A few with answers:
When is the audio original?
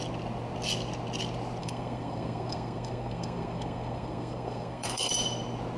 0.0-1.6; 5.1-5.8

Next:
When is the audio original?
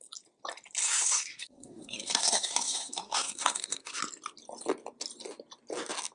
0.0-0.8; 4.0-6.1